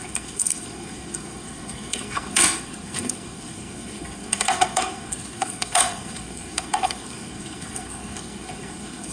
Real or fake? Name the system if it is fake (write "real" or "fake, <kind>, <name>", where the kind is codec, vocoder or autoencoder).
fake, codec, SNAC